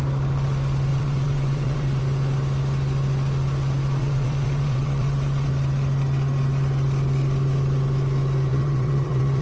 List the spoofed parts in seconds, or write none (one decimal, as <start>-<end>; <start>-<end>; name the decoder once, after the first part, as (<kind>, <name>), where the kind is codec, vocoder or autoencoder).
0.9-2.0 (vocoder, WaveNeXt); 4.0-5.5; 8.5-9.4